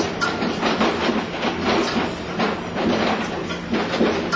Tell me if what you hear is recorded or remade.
recorded